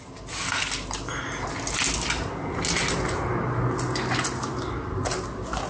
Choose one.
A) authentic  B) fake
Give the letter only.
A